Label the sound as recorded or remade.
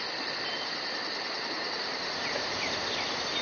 recorded